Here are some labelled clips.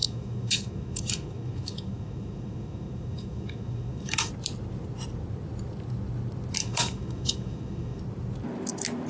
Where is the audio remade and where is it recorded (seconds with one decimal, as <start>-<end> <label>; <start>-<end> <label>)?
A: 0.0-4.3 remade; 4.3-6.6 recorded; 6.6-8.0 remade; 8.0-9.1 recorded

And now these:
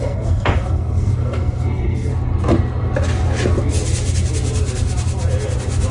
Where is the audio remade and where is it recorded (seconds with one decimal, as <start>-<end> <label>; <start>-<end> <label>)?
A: 0.0-2.1 remade; 2.1-5.9 recorded

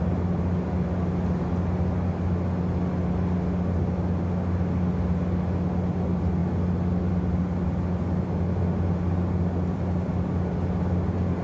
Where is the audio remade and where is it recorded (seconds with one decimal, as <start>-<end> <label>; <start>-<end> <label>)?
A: 0.0-11.4 recorded

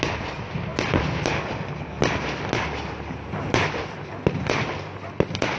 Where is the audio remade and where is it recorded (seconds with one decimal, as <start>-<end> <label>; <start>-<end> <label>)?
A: 0.0-5.6 recorded